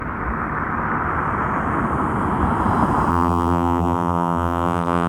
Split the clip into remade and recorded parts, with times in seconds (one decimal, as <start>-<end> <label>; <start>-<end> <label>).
0.0-3.1 recorded; 3.1-5.1 remade